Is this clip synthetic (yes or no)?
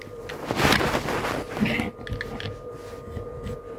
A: no